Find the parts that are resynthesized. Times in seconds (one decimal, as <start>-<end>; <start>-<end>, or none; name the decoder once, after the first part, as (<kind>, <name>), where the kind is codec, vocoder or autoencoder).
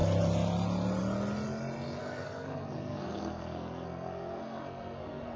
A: 2.0-5.4 (codec, SNAC)